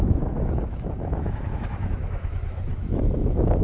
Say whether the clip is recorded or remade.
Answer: remade